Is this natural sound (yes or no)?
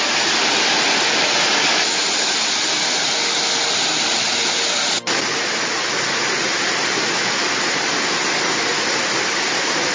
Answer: yes